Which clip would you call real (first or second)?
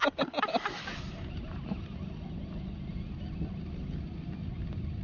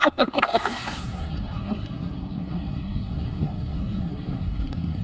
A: first